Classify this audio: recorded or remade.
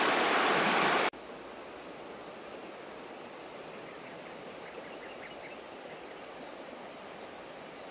recorded